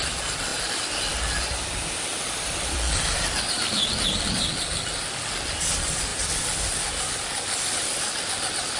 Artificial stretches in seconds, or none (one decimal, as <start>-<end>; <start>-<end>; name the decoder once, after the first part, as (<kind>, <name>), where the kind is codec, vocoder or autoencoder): none